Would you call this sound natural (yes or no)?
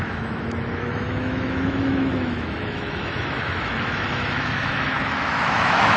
no